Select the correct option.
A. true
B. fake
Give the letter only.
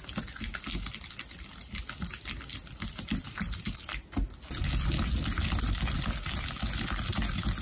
A